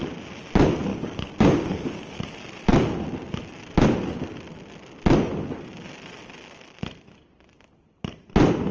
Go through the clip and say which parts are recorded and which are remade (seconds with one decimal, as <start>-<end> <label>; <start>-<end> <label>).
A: 0.0-0.9 recorded; 0.9-2.2 remade; 2.2-8.7 recorded

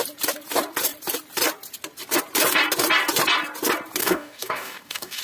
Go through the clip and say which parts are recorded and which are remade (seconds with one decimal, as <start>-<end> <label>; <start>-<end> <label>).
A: 0.0-4.0 recorded; 4.0-5.2 remade

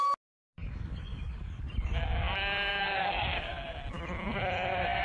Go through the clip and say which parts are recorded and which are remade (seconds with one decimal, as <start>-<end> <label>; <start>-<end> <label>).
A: 0.0-0.6 recorded; 0.6-1.7 remade; 1.7-2.7 recorded; 2.7-3.5 remade; 3.5-5.0 recorded

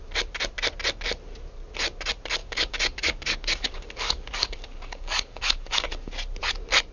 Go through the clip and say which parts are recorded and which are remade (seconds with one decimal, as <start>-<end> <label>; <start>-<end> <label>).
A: 0.0-2.4 recorded; 2.4-6.1 remade; 6.1-6.9 recorded

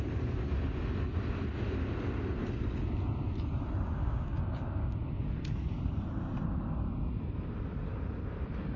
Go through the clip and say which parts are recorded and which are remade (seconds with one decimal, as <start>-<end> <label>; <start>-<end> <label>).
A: 0.0-4.0 recorded; 4.0-5.1 remade; 5.1-8.8 recorded

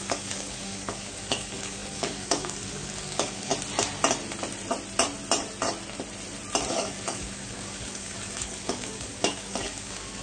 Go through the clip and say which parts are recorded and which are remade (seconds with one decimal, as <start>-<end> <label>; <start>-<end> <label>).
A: 0.0-3.5 remade; 3.5-6.7 recorded; 6.7-10.2 remade

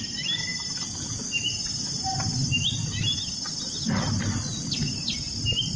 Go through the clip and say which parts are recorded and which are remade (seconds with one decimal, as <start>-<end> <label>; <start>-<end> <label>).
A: 0.0-5.8 recorded

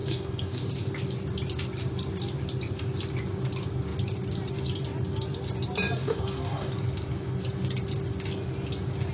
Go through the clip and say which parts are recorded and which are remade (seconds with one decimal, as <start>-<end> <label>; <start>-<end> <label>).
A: 0.0-0.7 remade; 0.7-6.0 recorded; 6.0-6.7 remade; 6.7-9.1 recorded